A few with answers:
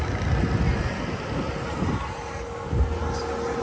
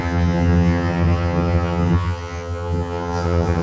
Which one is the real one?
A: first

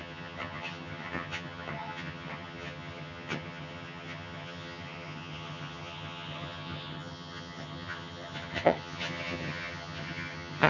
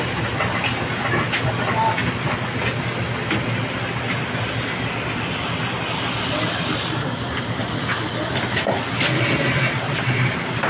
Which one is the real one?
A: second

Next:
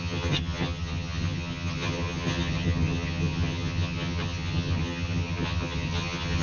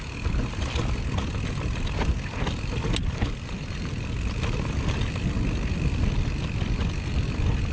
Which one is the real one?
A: second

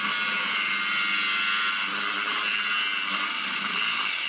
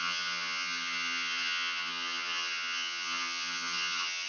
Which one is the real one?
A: first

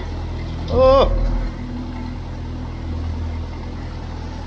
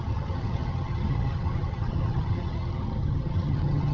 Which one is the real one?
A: first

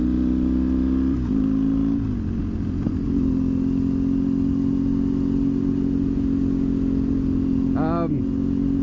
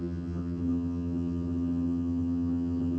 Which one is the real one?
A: first